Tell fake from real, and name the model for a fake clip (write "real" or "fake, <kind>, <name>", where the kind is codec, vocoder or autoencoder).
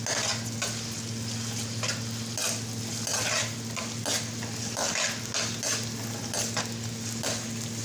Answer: real